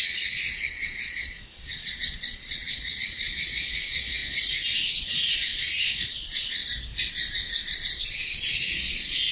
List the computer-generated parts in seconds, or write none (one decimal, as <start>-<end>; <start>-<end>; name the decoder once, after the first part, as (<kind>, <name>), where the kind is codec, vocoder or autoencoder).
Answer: 0.0-4.2 (vocoder, Vocos); 4.9-6.6; 8.0-9.3